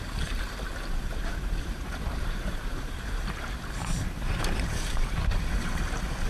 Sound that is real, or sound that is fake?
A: fake